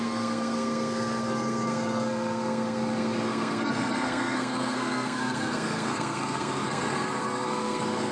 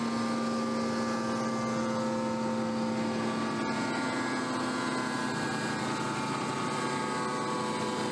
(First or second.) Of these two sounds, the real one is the second